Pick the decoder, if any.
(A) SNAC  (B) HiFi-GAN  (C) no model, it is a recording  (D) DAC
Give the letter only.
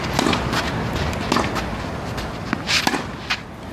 C